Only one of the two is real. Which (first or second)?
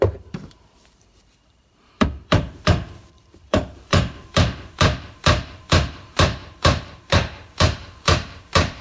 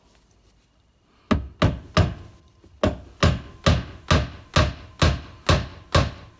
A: second